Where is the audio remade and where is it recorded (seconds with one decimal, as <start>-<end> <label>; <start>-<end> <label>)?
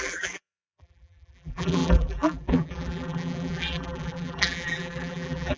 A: 0.0-5.6 remade